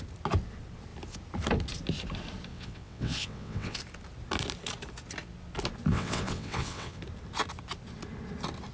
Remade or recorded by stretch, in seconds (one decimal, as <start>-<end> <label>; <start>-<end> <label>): 0.0-2.5 recorded; 2.5-3.8 remade; 3.8-5.9 recorded; 5.9-7.0 remade; 7.0-8.7 recorded